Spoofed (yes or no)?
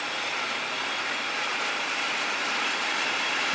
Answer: yes